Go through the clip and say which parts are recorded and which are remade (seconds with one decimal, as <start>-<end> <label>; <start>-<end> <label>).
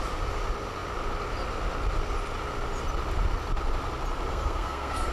0.0-4.3 recorded; 4.3-5.1 remade